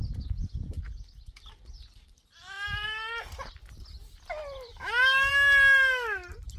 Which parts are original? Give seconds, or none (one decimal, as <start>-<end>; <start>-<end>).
0.0-4.7; 5.3-6.6